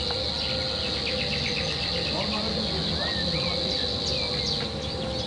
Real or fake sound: real